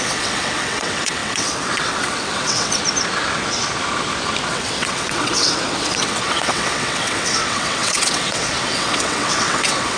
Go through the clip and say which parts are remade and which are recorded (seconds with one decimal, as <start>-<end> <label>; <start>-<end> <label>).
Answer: 0.0-2.8 remade; 2.8-4.5 recorded; 4.5-10.0 remade